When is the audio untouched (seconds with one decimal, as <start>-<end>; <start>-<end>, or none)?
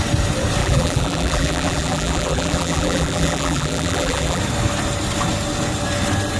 0.0-0.6; 4.4-6.4